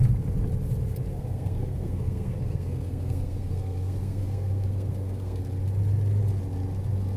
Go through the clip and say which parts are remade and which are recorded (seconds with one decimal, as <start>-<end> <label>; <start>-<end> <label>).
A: 0.0-1.1 recorded; 1.1-5.4 remade; 5.4-7.2 recorded